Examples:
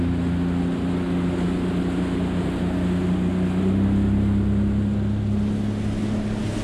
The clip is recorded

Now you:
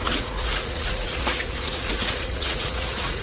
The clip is remade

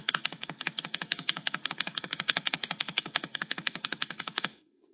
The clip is remade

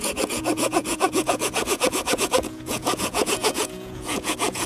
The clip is remade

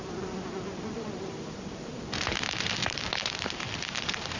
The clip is remade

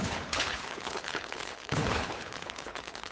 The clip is remade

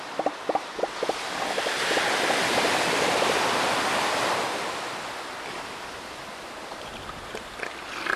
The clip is recorded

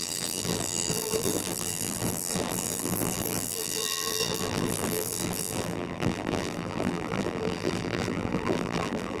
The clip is remade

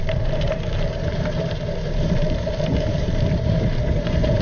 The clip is remade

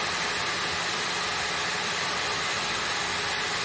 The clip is recorded